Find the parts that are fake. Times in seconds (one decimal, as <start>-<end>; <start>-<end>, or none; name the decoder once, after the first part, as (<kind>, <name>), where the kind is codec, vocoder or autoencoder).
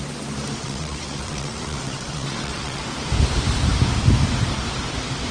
0.6-2.8 (vocoder, WaveNeXt)